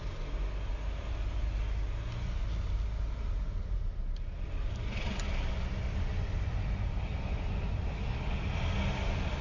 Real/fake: real